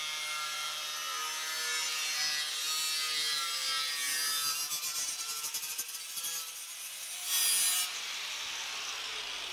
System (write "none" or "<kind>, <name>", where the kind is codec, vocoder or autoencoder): none